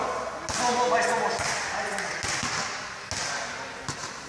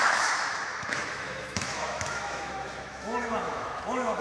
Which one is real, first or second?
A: first